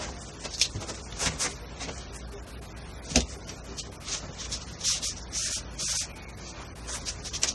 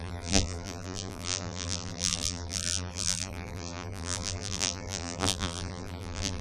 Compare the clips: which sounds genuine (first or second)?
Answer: first